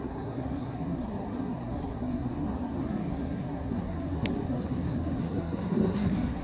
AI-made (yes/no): yes